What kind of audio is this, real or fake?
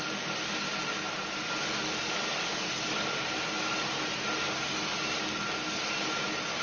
real